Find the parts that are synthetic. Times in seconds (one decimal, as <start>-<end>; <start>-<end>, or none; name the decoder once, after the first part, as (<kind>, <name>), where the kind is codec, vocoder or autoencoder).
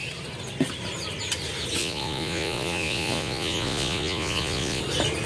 1.8-4.8 (vocoder, Vocos)